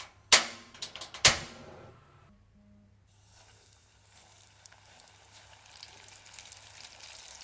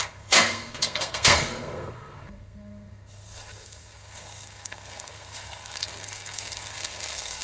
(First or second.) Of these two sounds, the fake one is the second